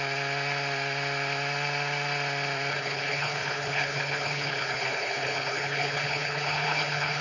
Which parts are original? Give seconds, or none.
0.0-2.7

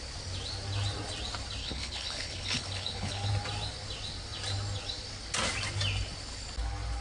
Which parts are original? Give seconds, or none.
0.0-1.6; 3.3-7.0

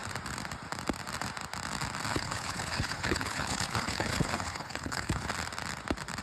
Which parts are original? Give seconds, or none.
0.0-2.1; 5.3-6.2

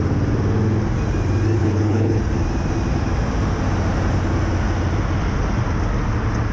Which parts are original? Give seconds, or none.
0.0-1.6; 2.2-6.5

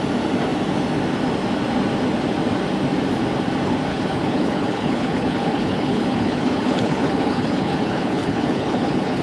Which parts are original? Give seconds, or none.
0.0-3.9

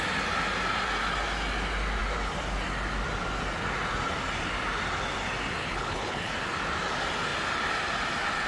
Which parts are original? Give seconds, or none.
0.0-5.6; 6.3-8.5